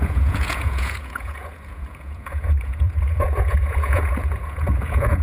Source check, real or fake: fake